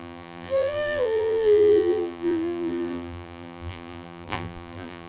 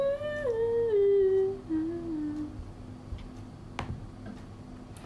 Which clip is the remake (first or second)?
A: first